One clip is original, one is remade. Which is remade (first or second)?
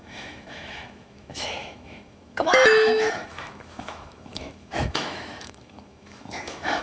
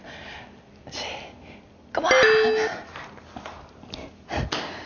first